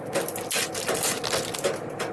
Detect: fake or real real